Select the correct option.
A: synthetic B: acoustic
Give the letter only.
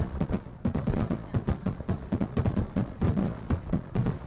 A